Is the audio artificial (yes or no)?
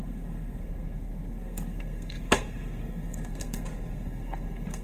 yes